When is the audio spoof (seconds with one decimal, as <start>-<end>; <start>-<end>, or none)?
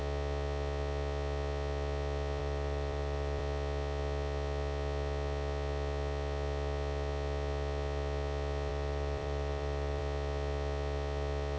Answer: 2.4-3.4; 8.7-10.0